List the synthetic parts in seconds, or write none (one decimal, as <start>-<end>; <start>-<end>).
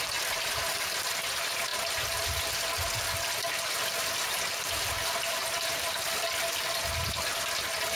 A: 5.4-5.9